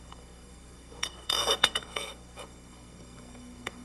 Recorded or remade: remade